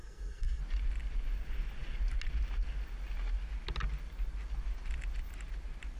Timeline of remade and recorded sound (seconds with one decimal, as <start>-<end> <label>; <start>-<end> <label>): 0.0-0.6 remade; 0.6-6.0 recorded